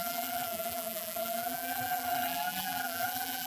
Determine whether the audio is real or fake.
fake